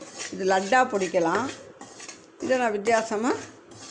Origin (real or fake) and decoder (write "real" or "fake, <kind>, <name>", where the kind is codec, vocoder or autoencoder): real